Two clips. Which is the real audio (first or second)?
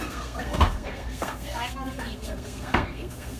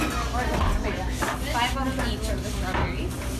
second